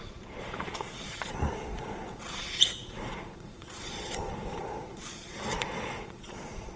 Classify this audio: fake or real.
fake